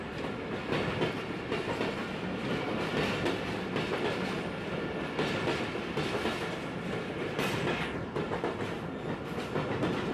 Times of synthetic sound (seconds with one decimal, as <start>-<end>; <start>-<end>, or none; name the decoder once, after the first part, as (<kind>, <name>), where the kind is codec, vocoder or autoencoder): none